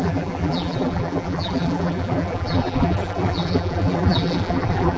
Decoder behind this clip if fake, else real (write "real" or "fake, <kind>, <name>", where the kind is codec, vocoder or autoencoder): fake, vocoder, BigVGAN v2